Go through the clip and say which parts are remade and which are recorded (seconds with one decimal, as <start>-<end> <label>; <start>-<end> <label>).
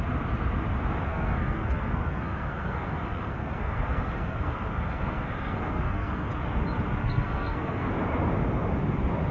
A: 0.0-1.1 recorded; 1.1-6.3 remade; 6.3-7.0 recorded; 7.0-7.9 remade; 7.9-9.3 recorded